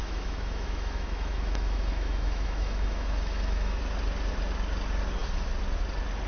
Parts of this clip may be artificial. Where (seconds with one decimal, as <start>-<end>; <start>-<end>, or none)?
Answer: 0.0-3.8